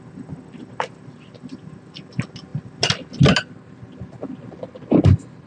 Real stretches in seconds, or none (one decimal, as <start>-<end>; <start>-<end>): 0.0-5.5